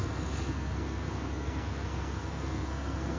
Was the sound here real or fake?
fake